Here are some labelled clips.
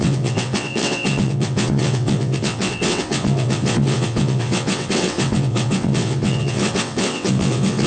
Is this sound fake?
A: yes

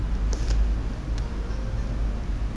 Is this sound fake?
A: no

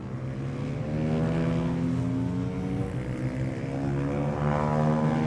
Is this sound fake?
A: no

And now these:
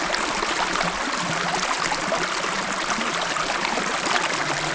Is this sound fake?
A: no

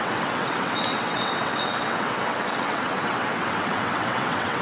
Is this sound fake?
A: yes